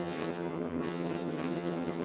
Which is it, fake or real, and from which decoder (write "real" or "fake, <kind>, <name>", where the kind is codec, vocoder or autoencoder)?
fake, vocoder, HiFi-GAN